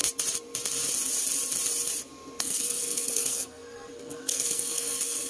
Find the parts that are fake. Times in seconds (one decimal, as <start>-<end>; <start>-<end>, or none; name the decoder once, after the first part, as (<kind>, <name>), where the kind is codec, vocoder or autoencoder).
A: 2.4-5.3 (codec, SNAC)